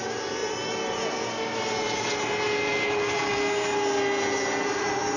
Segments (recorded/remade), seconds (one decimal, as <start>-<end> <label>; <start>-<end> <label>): 0.0-5.2 recorded